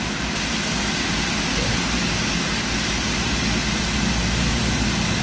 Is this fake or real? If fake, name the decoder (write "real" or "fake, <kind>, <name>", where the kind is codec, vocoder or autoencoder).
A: real